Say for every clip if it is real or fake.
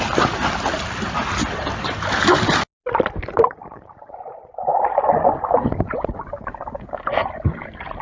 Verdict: real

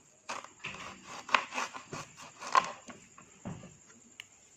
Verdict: real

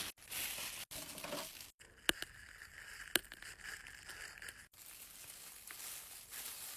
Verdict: real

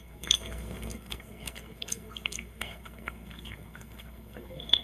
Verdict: fake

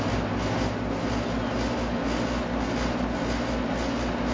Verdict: real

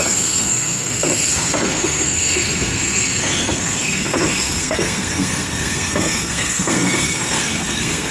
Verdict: fake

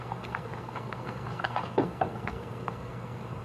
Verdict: fake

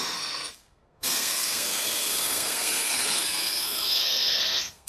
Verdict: fake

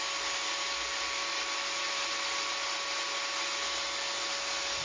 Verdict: real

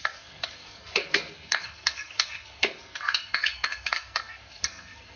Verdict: fake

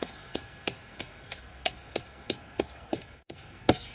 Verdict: fake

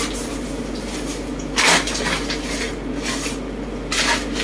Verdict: real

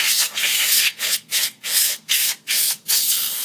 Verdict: fake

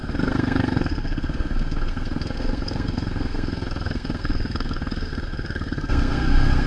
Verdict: fake